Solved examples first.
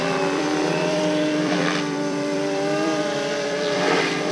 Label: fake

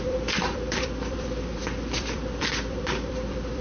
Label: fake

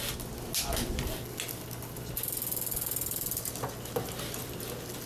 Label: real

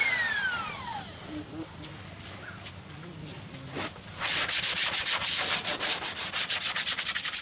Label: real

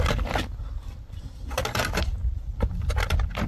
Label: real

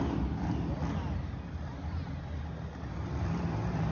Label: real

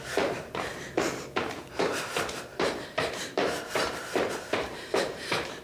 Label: fake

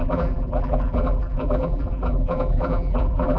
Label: fake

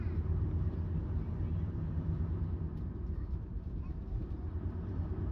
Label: fake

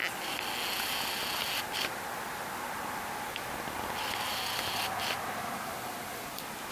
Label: real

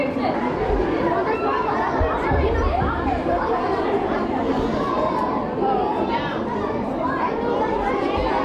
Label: fake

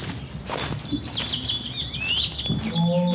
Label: real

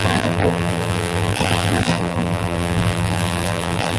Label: fake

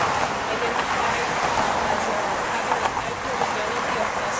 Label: real